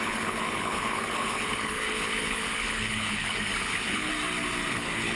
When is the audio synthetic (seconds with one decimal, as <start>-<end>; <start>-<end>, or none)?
0.0-4.1; 4.7-5.2